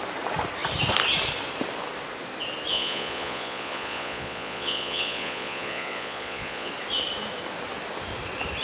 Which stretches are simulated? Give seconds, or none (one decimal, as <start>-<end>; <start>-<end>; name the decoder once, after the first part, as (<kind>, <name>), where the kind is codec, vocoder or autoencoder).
2.7-6.7 (vocoder, Vocos)